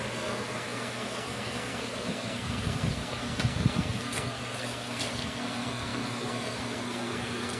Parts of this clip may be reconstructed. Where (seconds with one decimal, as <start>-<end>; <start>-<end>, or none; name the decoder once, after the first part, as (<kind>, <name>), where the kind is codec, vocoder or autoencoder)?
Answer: 0.0-7.6 (codec, SNAC)